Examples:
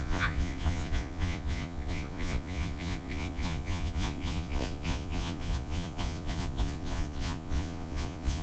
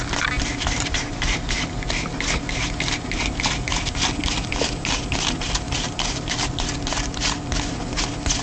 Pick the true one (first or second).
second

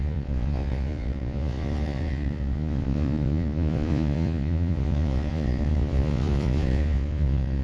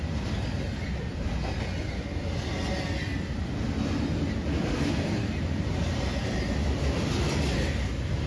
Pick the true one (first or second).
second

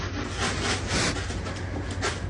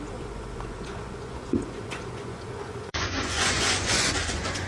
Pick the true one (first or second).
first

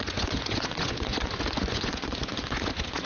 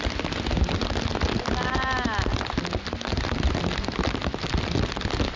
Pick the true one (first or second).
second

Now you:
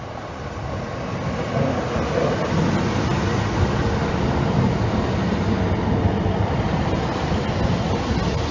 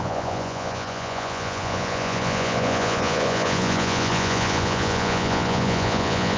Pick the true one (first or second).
first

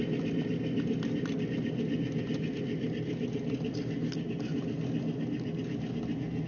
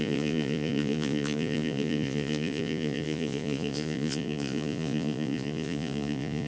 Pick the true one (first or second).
first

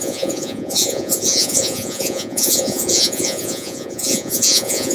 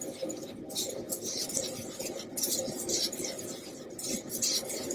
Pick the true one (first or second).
second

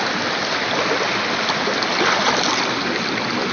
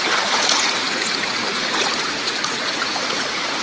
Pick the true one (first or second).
first